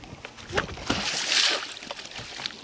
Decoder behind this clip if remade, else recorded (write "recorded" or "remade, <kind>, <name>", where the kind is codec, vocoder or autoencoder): recorded